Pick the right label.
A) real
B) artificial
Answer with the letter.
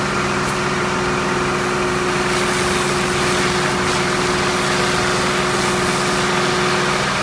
A